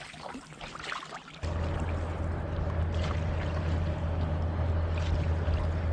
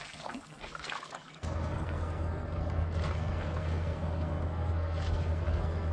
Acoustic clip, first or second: first